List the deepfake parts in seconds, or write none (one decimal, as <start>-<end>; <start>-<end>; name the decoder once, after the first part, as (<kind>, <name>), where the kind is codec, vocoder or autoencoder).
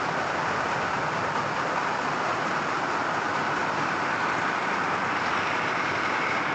3.6-6.0 (vocoder, BigVGAN v2)